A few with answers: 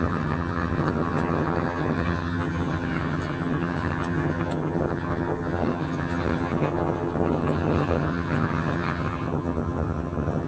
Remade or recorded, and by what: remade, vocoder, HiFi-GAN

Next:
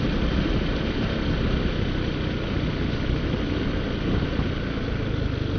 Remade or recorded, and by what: recorded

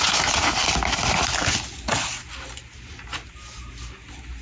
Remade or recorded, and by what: recorded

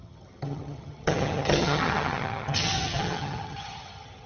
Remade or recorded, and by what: remade, vocoder, HiFi-GAN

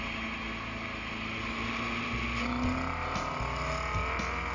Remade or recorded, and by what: recorded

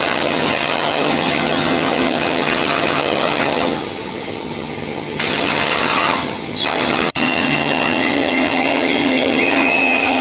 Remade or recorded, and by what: remade, vocoder, HiFi-GAN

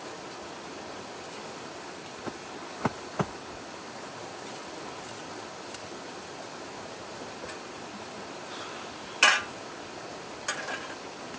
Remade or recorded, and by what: recorded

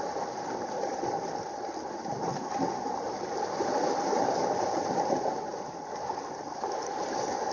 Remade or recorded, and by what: recorded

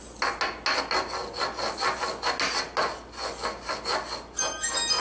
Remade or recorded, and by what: recorded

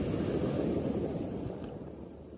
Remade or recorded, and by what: recorded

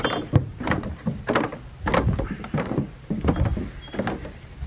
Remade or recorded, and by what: recorded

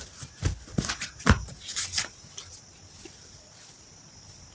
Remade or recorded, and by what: recorded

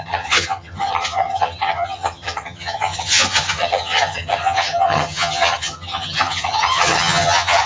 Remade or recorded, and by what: remade, vocoder, HiFi-GAN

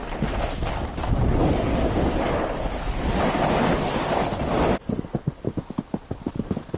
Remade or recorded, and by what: recorded